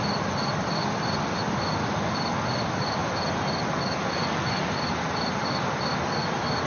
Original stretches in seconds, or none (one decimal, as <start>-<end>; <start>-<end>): 0.0-6.7

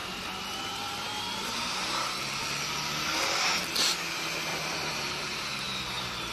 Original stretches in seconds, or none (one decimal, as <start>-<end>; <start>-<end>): 0.0-4.5; 5.5-6.3

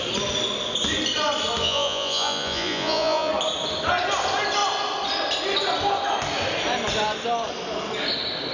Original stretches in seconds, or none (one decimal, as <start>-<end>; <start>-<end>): 0.0-1.6; 3.3-8.5